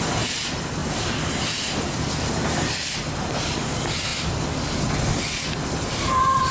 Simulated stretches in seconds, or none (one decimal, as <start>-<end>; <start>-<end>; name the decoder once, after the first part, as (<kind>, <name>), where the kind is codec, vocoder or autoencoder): none